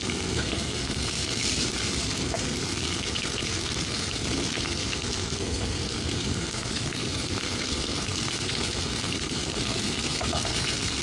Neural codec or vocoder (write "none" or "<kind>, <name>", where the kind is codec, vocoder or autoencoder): codec, SNAC